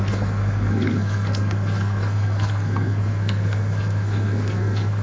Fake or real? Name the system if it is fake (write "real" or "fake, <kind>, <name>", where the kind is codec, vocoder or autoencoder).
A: fake, codec, SNAC